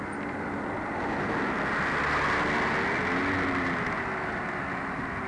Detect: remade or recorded recorded